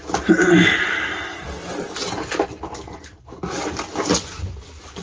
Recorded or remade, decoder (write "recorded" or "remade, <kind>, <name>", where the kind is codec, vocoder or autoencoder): recorded